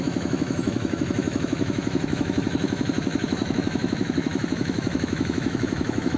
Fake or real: fake